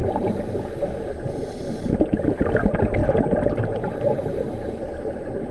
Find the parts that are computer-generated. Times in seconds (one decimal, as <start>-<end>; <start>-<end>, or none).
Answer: 0.0-0.5; 3.0-4.8